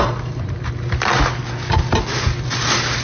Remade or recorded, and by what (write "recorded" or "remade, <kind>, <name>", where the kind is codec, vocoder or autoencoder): recorded